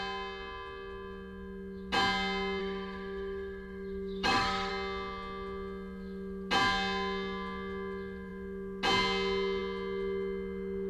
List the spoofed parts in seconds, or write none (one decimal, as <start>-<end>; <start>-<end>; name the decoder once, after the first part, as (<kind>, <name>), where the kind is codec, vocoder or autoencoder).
2.6-4.7 (autoencoder, DAC-VAE)